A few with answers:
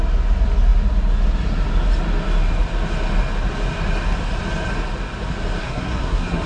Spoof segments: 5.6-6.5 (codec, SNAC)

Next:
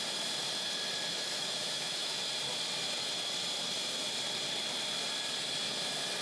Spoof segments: 1.1-2.2 (autoencoder, DAC-VAE)

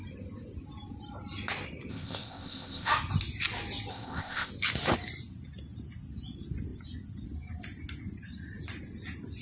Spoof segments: 1.9-2.9 (codec, ZipCodec); 3.9-4.5

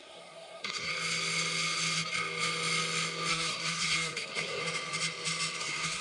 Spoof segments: 0.0-0.9 (codec, SNAC); 3.3-4.6; 5.6-6.0

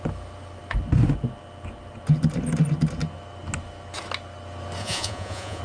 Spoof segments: 4.8-5.6 (vocoder, Vocos)

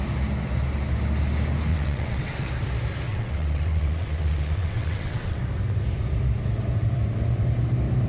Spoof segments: 1.7-2.5 (vocoder, WaveNeXt); 3.1-5.4

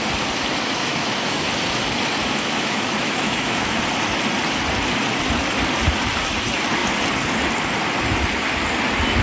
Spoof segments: 0.8-1.5 (autoencoder, DAC-VAE); 2.2-3.8

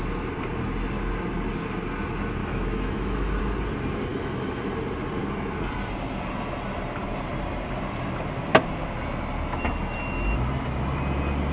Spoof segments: 2.4-3.4 (autoencoder, DAC-VAE); 4.1-4.6